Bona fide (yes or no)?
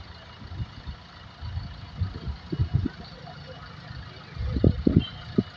yes